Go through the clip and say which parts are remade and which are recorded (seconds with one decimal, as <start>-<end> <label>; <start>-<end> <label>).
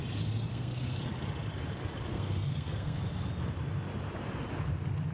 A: 0.0-0.5 recorded; 0.5-1.0 remade; 1.0-2.1 recorded; 2.1-3.0 remade; 3.0-5.1 recorded